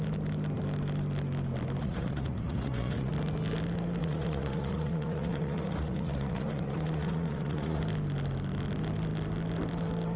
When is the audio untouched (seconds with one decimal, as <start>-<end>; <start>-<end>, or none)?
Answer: 0.0-1.8; 3.1-4.0; 7.8-10.2